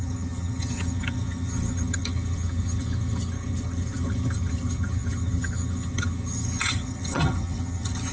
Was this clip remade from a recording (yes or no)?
yes